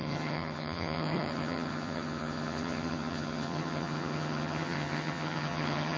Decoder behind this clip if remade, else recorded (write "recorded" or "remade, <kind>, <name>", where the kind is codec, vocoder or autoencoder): remade, vocoder, HiFi-GAN